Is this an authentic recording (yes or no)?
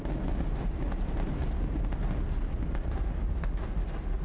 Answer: yes